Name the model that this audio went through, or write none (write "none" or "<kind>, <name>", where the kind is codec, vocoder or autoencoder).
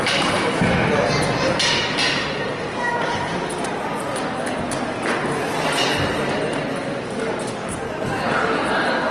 none